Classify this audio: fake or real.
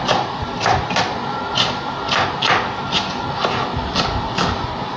real